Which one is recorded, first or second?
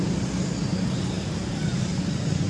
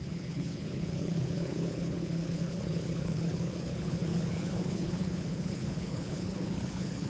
first